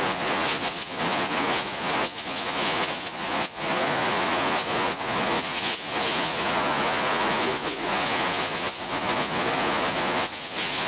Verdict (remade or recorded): remade